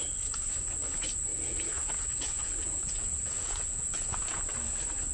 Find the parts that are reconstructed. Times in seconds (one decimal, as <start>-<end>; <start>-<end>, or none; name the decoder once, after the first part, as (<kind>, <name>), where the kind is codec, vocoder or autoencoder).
1.3-4.4 (vocoder, Vocos)